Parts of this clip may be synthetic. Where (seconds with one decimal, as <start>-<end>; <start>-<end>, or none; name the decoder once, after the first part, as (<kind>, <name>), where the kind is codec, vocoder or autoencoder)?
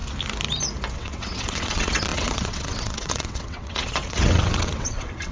0.9-5.3 (vocoder, WaveNeXt)